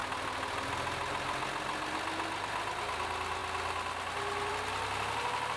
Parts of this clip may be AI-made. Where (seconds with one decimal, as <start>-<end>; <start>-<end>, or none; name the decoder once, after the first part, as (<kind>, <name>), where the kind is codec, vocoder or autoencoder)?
none